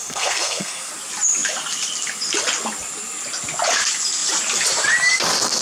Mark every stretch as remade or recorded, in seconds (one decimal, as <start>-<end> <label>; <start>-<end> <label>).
0.0-0.9 remade; 0.9-5.6 recorded